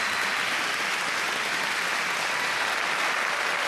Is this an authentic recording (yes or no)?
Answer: yes